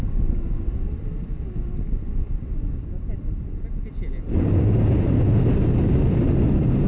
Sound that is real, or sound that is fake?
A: real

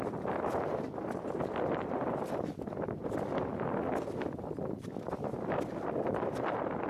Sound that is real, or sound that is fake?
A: real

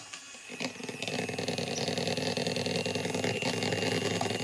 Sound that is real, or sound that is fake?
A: real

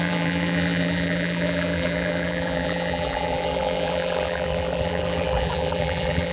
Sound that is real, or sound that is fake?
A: fake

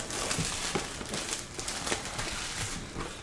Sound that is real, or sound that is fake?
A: real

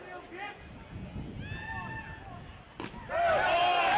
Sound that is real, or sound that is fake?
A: real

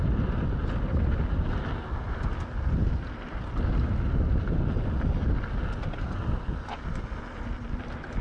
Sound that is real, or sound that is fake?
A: real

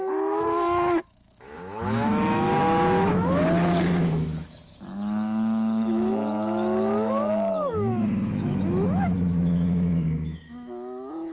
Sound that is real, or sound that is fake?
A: fake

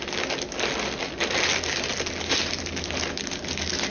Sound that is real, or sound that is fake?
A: real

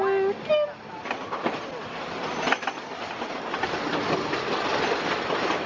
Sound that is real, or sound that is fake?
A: real